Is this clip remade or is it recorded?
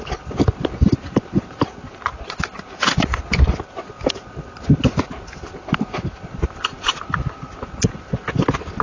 recorded